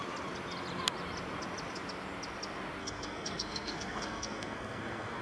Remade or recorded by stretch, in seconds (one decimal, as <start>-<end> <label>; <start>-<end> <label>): 0.0-2.8 recorded; 2.8-5.2 remade

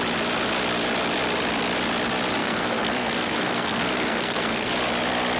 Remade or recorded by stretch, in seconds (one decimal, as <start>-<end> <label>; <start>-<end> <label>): 0.0-2.4 recorded; 2.4-4.7 remade; 4.7-5.4 recorded